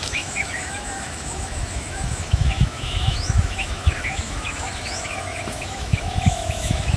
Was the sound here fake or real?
fake